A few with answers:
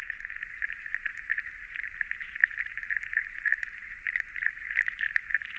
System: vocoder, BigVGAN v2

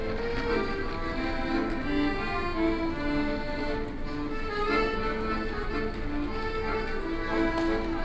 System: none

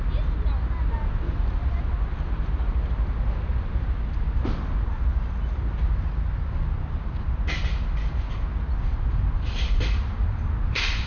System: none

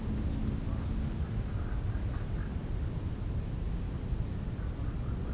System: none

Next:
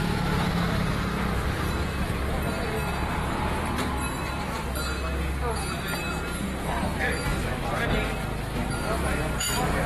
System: none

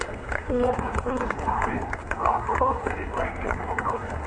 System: codec, SNAC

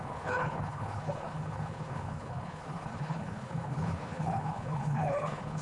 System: codec, HILCodec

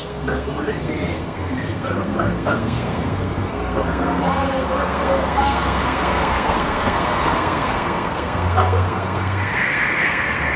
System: codec, SNAC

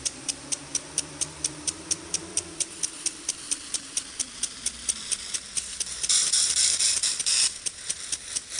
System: vocoder, BigVGAN v2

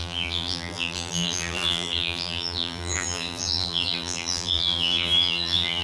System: vocoder, BigVGAN v2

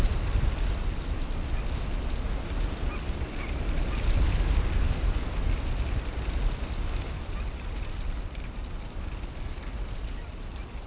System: none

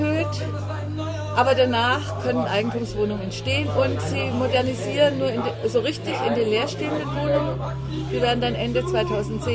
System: none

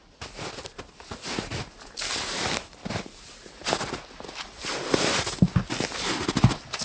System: none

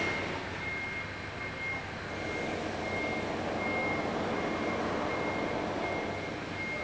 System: none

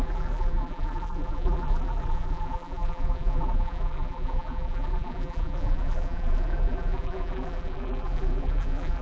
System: vocoder, BigVGAN v2